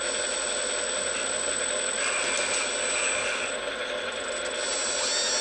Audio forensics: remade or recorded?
recorded